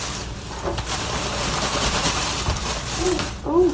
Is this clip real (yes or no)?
yes